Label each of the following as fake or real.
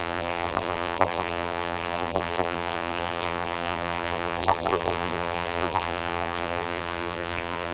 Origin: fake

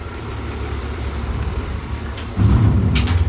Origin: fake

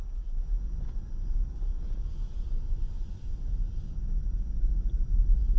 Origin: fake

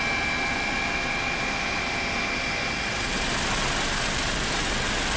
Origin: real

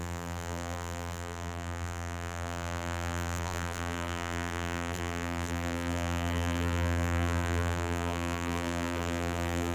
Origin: fake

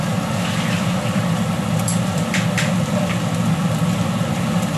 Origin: fake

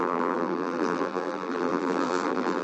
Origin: fake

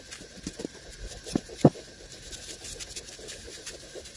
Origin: fake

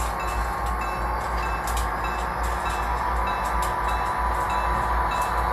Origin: real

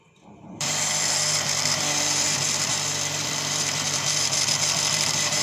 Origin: fake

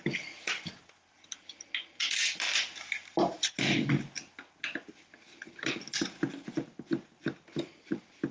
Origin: real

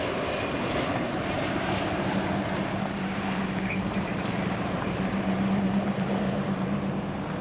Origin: fake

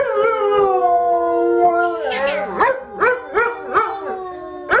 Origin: real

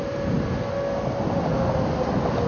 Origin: real